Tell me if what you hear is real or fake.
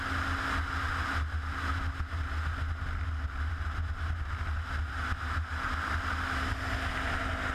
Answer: real